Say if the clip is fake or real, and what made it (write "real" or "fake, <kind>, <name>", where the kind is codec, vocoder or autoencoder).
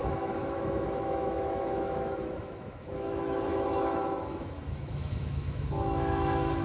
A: fake, autoencoder, DAC-VAE